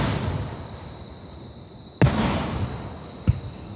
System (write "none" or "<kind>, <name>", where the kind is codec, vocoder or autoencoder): none